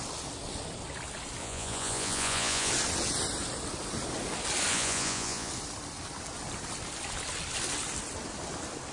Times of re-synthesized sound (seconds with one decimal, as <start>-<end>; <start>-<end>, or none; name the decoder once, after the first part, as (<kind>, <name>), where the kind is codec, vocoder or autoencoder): 1.4-2.7 (vocoder, Vocos); 4.7-5.5